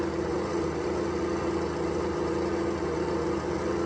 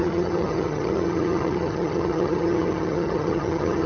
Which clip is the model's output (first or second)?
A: second